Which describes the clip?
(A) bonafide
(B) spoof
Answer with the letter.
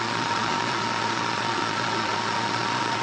B